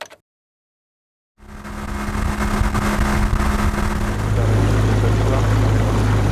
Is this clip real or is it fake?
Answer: real